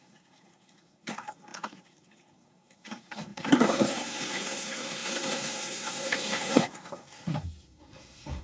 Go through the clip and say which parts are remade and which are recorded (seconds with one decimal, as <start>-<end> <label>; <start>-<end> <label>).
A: 0.0-8.4 remade